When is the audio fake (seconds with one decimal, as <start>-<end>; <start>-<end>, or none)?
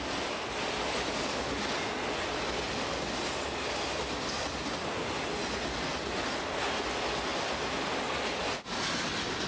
none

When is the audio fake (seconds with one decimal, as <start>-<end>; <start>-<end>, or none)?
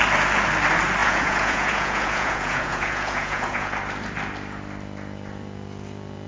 1.0-3.7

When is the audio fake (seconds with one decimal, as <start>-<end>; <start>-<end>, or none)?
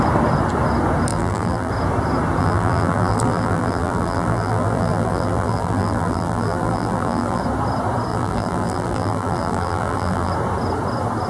1.1-1.7; 2.4-7.4; 8.1-10.3